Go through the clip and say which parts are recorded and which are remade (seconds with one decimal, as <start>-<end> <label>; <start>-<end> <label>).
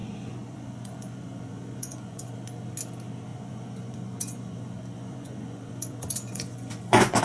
0.0-2.3 remade; 2.3-3.3 recorded; 3.3-7.2 remade